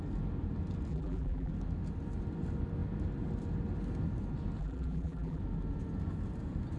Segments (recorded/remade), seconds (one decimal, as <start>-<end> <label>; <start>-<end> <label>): 0.0-0.9 recorded; 0.9-1.5 remade; 1.5-4.6 recorded; 4.6-5.4 remade; 5.4-6.8 recorded